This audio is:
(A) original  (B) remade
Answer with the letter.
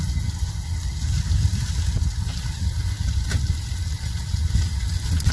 A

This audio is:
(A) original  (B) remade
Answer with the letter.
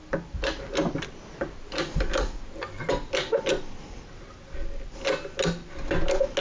A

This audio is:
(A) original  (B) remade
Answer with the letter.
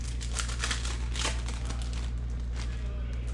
A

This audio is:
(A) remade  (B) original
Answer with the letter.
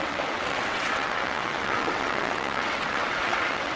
A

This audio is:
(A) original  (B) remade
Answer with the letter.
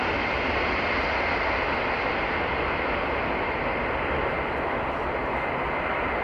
A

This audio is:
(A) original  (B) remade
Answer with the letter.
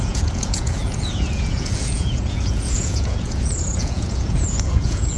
B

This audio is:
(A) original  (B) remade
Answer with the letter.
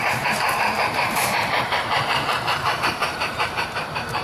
B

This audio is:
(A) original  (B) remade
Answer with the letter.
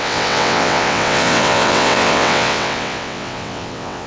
B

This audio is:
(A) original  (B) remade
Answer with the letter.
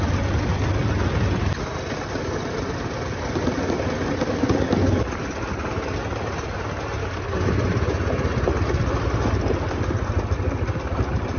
A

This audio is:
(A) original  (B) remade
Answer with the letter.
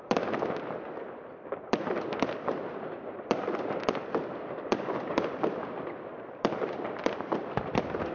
B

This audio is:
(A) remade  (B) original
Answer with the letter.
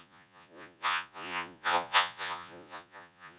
A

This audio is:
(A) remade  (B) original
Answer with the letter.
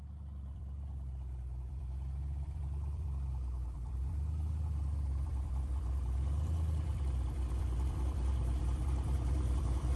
A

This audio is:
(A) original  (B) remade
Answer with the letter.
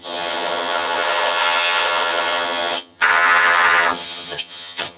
B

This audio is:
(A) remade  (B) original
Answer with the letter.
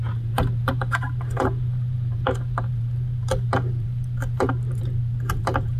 A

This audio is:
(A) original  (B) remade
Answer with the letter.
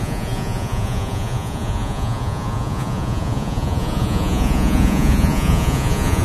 B